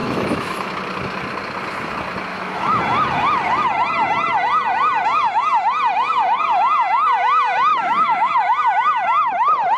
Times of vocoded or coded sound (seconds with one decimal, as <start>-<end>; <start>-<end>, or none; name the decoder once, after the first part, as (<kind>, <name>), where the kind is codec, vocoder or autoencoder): 0.0-0.7 (autoencoder, DAC-VAE); 2.3-2.8; 7.7-8.3